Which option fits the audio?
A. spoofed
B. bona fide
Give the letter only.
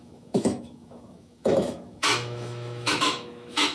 A